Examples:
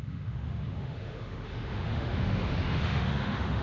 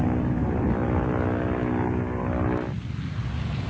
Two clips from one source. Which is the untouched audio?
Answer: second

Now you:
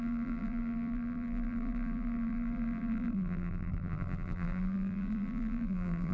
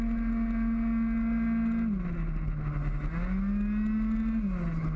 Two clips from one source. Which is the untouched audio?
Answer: second